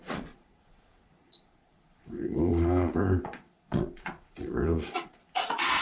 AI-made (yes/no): yes